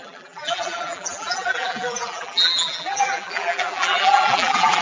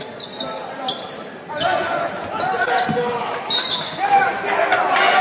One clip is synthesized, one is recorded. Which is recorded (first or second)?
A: second